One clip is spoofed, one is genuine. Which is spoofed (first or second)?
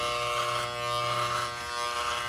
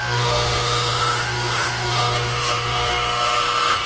second